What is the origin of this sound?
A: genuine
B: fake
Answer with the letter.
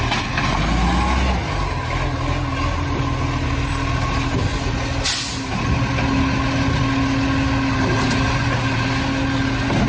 A